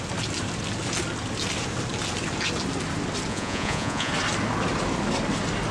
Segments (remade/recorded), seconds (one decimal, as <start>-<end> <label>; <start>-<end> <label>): 0.0-3.3 recorded; 3.3-4.1 remade; 4.1-5.7 recorded